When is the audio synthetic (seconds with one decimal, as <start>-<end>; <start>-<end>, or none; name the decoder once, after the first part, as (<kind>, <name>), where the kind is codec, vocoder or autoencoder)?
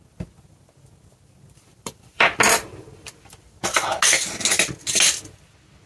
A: 1.7-4.0 (vocoder, BigVGAN v2)